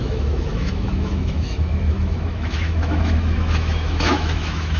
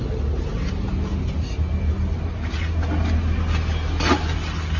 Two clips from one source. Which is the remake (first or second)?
first